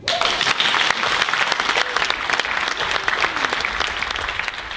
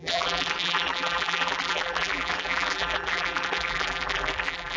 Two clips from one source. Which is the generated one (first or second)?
second